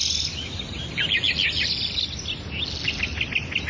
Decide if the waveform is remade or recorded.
recorded